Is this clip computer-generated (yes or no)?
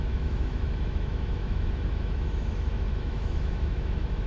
yes